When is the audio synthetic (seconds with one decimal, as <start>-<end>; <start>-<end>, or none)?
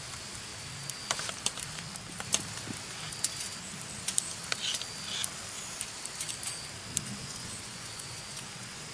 7.2-8.9